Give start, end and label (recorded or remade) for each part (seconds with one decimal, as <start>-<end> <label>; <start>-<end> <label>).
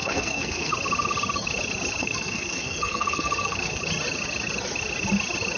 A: 0.0-0.7 remade; 0.7-2.0 recorded; 2.0-3.8 remade; 3.8-5.6 recorded